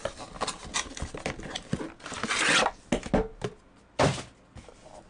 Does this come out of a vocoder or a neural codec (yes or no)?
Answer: no